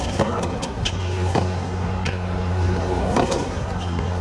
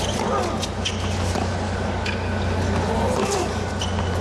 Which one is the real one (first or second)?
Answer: second